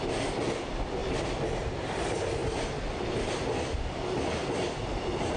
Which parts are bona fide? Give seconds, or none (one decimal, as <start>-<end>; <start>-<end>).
0.0-1.0; 1.9-4.4